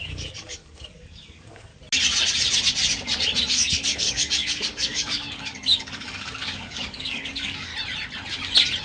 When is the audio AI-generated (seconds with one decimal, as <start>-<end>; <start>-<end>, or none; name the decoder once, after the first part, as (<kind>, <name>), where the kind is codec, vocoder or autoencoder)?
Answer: 0.0-1.7 (codec, DAC); 3.5-7.7